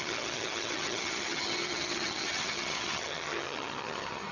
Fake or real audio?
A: fake